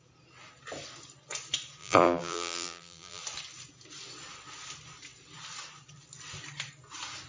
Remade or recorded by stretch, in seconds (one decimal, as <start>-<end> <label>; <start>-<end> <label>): 0.0-1.8 recorded; 1.8-3.2 remade; 3.2-7.3 recorded